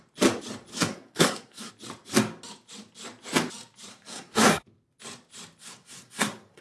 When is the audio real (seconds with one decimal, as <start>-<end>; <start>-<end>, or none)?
0.0-0.7; 1.7-3.9; 4.6-5.6